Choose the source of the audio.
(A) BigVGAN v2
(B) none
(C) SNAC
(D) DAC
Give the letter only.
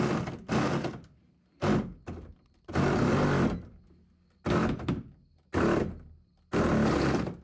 B